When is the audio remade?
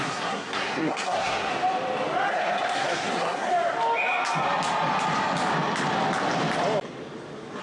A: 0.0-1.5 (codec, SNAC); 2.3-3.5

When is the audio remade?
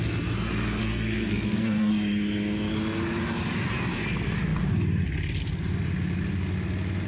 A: 0.8-1.9 (codec, SNAC)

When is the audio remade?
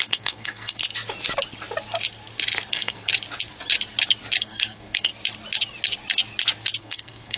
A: 0.0-0.8 (codec, SNAC); 2.7-3.1; 4.4-5.1; 6.8-7.4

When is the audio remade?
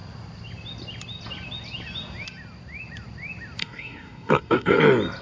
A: 3.6-4.8 (codec, SNAC)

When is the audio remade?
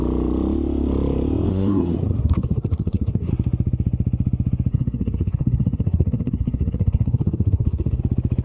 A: 1.5-3.3 (codec, SNAC); 4.7-8.0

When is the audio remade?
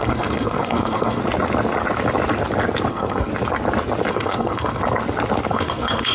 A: 0.0-1.2 (codec, SNAC); 2.9-3.3; 4.1-4.8; 5.5-6.1